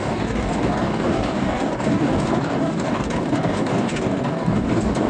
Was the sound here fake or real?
fake